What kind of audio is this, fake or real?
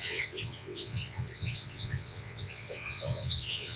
fake